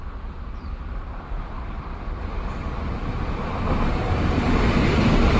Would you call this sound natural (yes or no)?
no